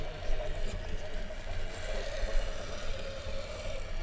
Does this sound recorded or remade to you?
recorded